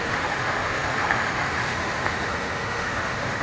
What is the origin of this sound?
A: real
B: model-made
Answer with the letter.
B